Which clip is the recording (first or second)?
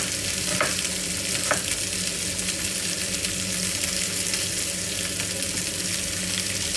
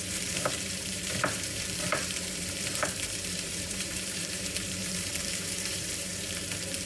first